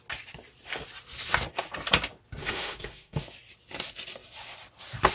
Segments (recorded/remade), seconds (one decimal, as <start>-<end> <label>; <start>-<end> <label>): 0.0-2.4 recorded; 2.4-3.2 remade; 3.2-5.1 recorded